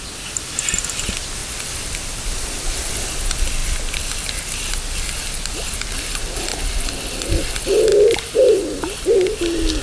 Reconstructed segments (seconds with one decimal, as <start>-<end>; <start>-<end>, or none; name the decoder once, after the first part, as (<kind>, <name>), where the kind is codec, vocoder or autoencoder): none